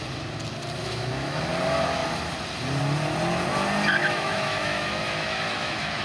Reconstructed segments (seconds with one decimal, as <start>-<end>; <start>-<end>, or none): 0.8-1.5; 4.0-6.0